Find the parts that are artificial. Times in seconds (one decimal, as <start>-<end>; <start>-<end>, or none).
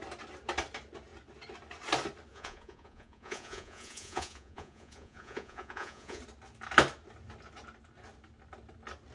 2.3-6.2